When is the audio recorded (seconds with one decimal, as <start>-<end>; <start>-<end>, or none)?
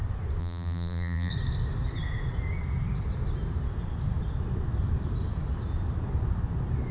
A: 0.0-0.4; 1.3-6.9